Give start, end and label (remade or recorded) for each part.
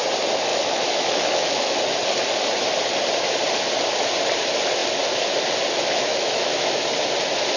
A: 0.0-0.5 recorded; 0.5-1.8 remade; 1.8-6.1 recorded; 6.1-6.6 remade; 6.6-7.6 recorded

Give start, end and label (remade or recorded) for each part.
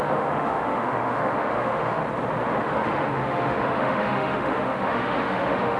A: 0.0-2.0 remade; 2.0-2.6 recorded; 2.6-5.8 remade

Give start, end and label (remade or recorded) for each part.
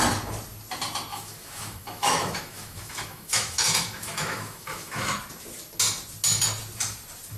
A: 0.0-1.1 recorded; 1.1-5.2 remade; 5.2-7.4 recorded